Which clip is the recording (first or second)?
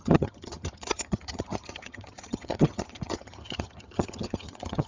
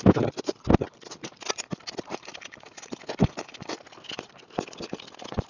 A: second